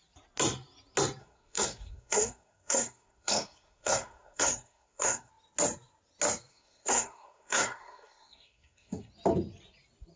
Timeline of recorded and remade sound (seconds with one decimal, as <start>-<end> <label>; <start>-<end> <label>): 0.0-1.2 recorded; 1.2-5.3 remade; 5.3-6.5 recorded; 6.5-9.1 remade; 9.1-10.2 recorded